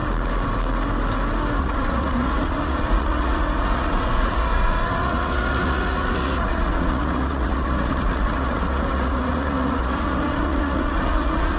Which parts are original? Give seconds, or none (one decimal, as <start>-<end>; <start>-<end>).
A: 0.0-1.6